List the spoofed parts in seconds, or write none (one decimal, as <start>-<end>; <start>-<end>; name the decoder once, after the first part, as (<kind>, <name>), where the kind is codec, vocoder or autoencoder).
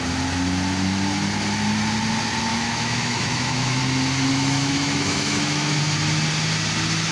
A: 2.5-3.8 (autoencoder, DAC-VAE); 4.3-5.8